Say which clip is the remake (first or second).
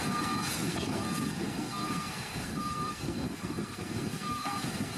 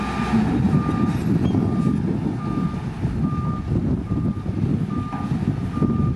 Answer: first